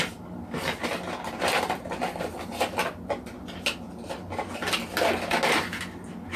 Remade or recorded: recorded